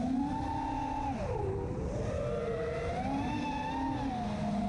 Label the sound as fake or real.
real